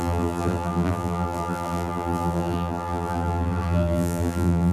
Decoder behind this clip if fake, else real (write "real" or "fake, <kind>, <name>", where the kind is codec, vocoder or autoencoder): fake, vocoder, BigVGAN v2